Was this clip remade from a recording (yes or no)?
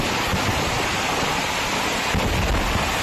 no